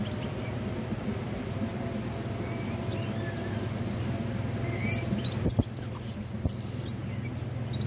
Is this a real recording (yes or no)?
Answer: yes